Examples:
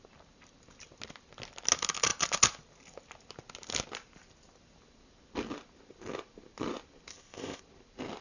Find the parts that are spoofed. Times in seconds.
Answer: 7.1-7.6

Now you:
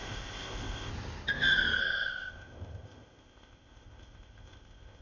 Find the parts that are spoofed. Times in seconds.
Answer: 0.0-0.9; 1.8-5.0

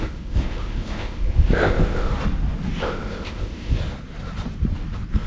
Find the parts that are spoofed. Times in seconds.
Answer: 0.0-2.1; 2.8-3.8